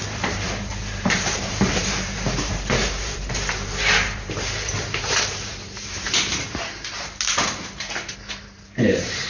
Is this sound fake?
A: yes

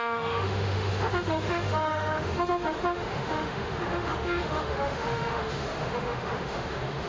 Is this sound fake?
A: yes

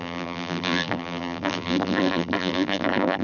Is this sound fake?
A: yes